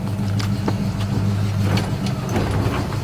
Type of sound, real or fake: real